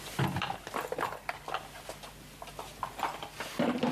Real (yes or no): yes